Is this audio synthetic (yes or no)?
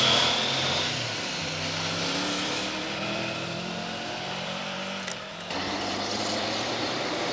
yes